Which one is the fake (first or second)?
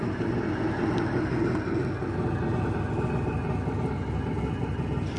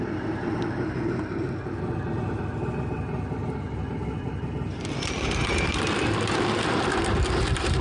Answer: second